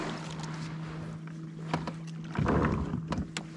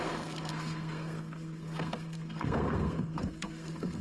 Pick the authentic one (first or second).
first